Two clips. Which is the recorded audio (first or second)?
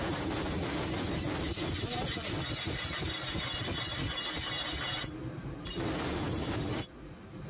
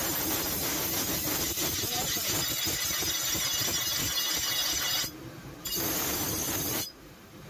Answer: first